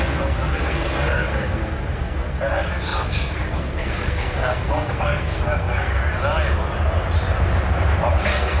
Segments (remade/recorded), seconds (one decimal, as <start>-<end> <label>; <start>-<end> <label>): 0.0-6.0 remade; 6.0-8.1 recorded; 8.1-8.6 remade

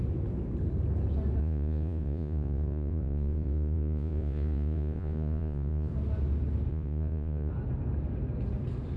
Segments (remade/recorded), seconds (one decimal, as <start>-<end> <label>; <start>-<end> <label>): 0.0-1.4 recorded; 1.4-5.9 remade; 5.9-6.7 recorded; 6.7-7.5 remade; 7.5-9.0 recorded

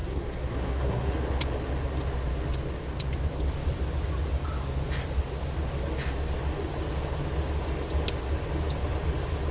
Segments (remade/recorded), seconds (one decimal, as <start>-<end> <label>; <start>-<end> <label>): 0.0-1.1 remade; 1.1-9.5 recorded

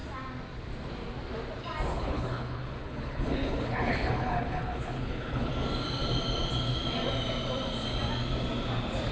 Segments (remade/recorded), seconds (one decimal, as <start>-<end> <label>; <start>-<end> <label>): 0.0-1.9 recorded; 1.9-5.5 remade; 5.5-9.1 recorded

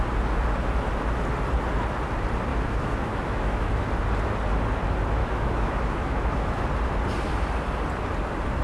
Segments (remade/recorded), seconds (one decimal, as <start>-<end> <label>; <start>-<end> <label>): 0.0-2.5 recorded; 2.5-3.8 remade; 3.8-5.2 recorded; 5.2-6.6 remade; 6.6-8.6 recorded

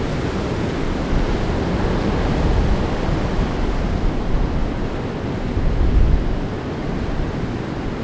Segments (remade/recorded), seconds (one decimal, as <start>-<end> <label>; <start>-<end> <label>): 0.0-8.0 recorded